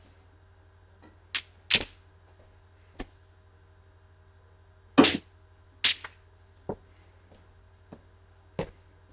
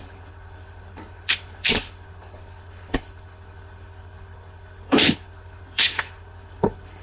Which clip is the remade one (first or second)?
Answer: second